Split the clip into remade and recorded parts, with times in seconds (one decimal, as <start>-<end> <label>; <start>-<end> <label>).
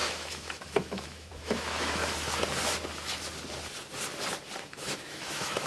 0.0-2.0 remade; 2.0-4.7 recorded; 4.7-5.7 remade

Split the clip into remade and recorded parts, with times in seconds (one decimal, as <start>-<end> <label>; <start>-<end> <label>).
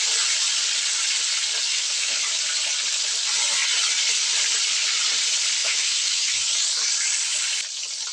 0.0-1.7 recorded; 1.7-2.2 remade; 2.2-5.6 recorded; 5.6-6.4 remade; 6.4-8.1 recorded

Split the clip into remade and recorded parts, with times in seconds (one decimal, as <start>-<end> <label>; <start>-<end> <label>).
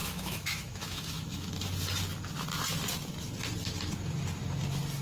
0.0-1.7 remade; 1.7-5.0 recorded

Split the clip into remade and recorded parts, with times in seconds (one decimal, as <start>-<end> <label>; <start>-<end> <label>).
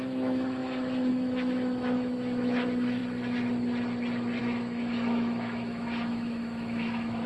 0.0-3.0 remade; 3.0-4.4 recorded; 4.4-7.3 remade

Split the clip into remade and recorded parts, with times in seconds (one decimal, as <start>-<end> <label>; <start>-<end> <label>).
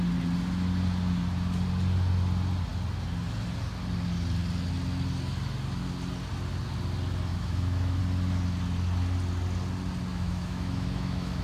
0.0-7.3 recorded; 7.3-8.0 remade; 8.0-10.1 recorded; 10.1-11.4 remade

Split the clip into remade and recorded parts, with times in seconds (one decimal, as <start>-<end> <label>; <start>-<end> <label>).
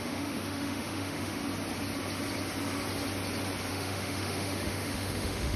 0.0-1.4 remade; 1.4-3.7 recorded; 3.7-5.6 remade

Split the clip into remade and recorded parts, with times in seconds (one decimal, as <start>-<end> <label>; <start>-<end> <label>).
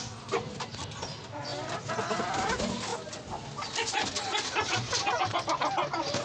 0.0-6.2 recorded